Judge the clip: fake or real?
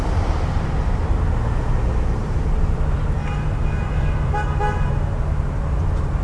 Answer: real